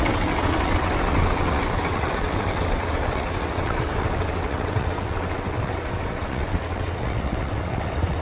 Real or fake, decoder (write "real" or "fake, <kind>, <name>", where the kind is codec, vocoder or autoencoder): fake, vocoder, WaveNeXt